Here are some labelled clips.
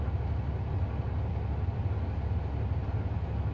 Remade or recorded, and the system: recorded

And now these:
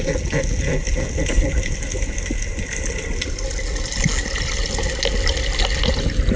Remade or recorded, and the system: recorded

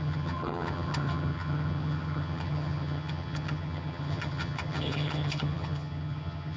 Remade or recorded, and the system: remade, vocoder, HiFi-GAN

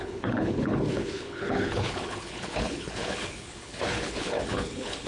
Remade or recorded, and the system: remade, codec, HILCodec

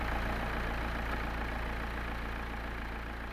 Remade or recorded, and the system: recorded